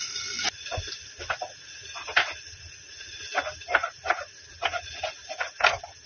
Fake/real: real